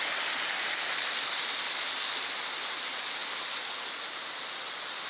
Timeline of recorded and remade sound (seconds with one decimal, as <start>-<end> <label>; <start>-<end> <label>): 0.0-5.1 recorded